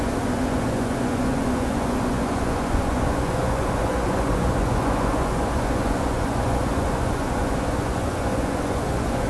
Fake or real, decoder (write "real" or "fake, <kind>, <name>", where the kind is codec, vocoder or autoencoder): fake, vocoder, Vocos